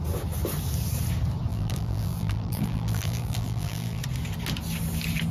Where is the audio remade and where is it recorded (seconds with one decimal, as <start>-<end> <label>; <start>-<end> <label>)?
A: 0.0-1.5 recorded; 1.5-4.0 remade; 4.0-5.3 recorded